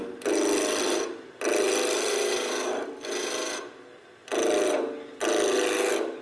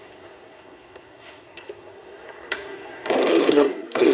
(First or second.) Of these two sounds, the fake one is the second